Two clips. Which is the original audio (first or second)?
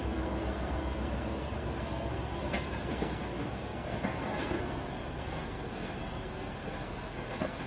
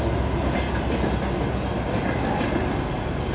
second